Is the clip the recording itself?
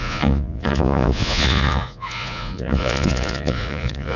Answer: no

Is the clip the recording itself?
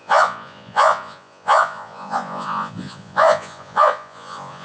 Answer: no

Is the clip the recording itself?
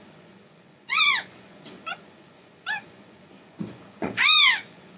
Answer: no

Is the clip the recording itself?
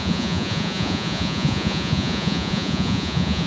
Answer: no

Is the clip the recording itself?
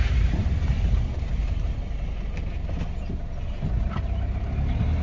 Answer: yes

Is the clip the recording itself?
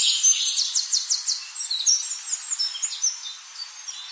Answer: yes